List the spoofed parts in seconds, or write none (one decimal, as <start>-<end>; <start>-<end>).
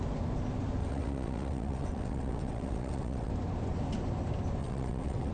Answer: 0.8-3.3; 4.6-5.3